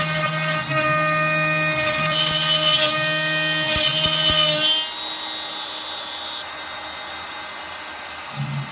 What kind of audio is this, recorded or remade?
recorded